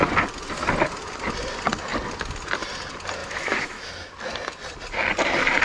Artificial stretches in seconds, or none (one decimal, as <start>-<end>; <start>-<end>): 3.2-3.9